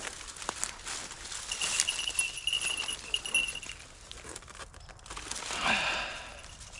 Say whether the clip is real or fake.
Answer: real